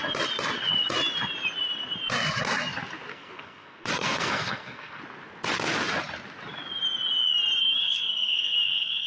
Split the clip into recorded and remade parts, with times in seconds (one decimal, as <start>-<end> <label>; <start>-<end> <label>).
0.0-3.1 recorded; 3.1-5.0 remade; 5.0-7.6 recorded; 7.6-9.1 remade